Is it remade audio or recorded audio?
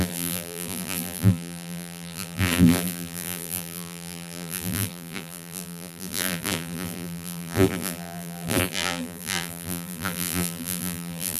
remade